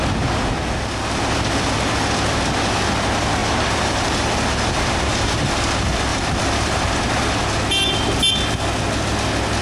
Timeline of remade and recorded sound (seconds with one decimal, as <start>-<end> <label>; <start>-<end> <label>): 0.0-3.4 recorded; 3.4-5.5 remade; 5.5-6.1 recorded; 6.1-7.2 remade; 7.2-9.6 recorded